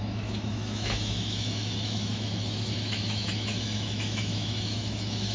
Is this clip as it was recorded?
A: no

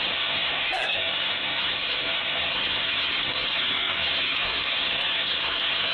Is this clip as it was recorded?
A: no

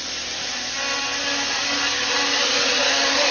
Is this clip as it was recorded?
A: yes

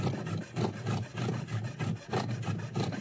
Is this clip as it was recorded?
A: yes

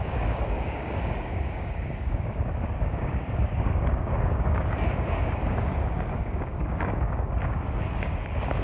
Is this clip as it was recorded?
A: no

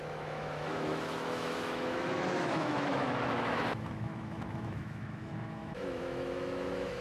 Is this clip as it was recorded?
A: no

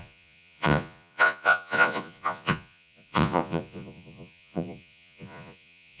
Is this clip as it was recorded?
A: no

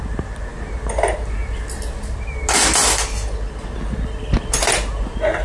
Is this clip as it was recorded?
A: yes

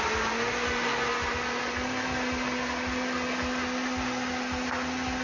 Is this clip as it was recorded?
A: yes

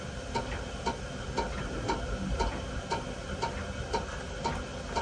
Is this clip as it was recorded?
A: yes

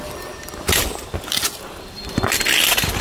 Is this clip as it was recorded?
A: yes